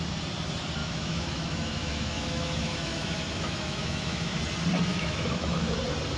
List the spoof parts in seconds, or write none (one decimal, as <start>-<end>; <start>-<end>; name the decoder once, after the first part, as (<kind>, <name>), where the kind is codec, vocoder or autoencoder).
0.8-4.4 (autoencoder, DAC-VAE); 4.9-5.8